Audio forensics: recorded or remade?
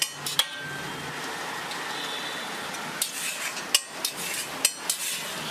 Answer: recorded